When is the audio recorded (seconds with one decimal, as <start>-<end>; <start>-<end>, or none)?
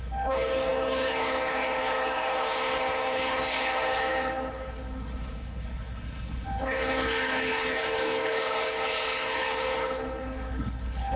none